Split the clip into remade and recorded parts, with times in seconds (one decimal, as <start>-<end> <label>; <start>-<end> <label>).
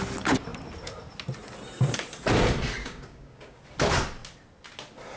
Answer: 0.0-2.8 recorded; 2.8-3.6 remade; 3.6-5.2 recorded